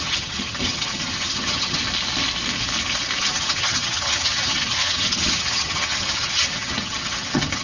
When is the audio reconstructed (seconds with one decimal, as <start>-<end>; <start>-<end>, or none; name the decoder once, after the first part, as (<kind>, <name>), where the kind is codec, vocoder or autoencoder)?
0.0-1.8 (vocoder, HiFi-GAN); 3.2-7.6